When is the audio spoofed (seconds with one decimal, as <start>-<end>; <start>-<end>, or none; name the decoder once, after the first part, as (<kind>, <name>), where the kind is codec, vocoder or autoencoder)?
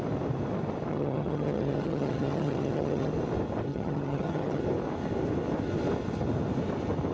0.9-3.1 (vocoder, HiFi-GAN); 3.7-4.6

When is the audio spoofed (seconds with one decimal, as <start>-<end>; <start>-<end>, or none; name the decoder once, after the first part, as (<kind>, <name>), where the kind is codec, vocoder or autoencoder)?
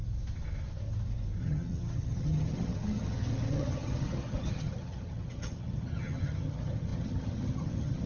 1.4-8.1 (vocoder, HiFi-GAN)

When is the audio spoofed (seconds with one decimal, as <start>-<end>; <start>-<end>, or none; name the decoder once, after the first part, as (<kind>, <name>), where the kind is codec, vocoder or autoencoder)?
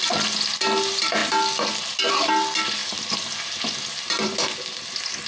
none